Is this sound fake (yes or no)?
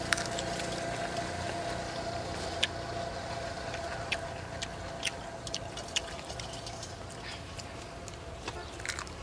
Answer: no